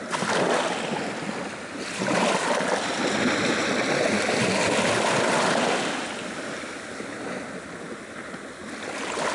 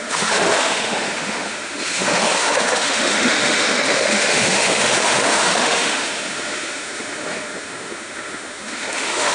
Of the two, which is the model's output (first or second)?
second